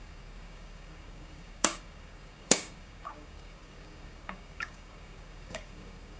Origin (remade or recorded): remade